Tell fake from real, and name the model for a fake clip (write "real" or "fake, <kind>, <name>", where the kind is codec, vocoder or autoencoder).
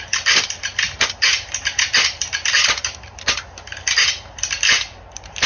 fake, vocoder, BigVGAN v2